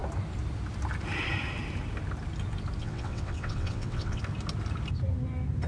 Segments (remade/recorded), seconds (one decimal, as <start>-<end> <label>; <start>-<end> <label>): 0.0-2.8 recorded; 2.8-4.2 remade; 4.2-5.7 recorded